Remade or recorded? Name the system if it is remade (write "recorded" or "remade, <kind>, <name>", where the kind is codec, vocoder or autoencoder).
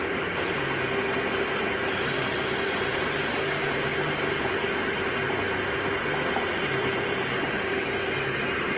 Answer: recorded